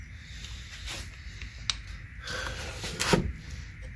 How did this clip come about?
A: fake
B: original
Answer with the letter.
B